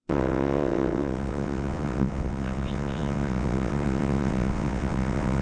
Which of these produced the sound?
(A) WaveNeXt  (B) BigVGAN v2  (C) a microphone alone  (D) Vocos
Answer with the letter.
A